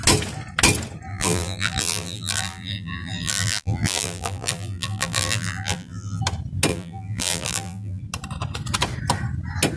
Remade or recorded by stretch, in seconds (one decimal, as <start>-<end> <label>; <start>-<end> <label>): 0.0-1.1 recorded; 1.1-6.2 remade; 6.2-6.7 recorded; 6.7-8.0 remade; 8.0-9.8 recorded